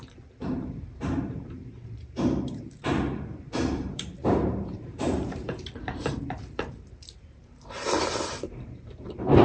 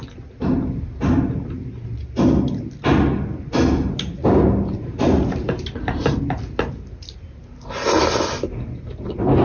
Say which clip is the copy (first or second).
first